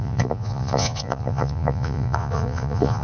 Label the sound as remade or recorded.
remade